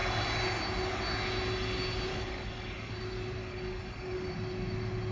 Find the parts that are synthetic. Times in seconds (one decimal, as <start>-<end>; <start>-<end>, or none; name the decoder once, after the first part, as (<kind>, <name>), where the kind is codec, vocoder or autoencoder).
2.1-2.9 (codec, DAC); 3.4-4.3